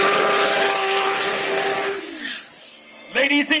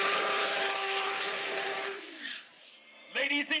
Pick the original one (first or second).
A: first